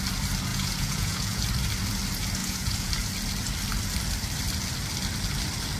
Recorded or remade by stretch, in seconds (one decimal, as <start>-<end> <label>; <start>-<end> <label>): 0.0-0.5 recorded; 0.5-1.4 remade; 1.4-2.4 recorded; 2.4-2.9 remade; 2.9-5.8 recorded